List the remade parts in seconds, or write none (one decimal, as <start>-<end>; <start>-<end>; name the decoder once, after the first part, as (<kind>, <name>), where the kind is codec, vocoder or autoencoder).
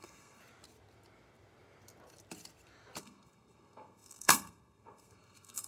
0.0-0.4 (codec, SNAC); 3.0-5.7